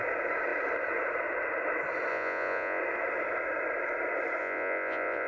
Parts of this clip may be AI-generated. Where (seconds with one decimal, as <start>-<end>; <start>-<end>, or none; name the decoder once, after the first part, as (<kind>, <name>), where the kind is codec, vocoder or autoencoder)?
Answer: 2.1-2.8 (vocoder, Vocos); 4.4-5.3